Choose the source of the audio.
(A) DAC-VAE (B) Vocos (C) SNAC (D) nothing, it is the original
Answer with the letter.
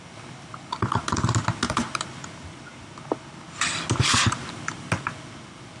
D